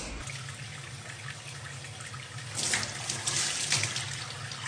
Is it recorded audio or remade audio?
recorded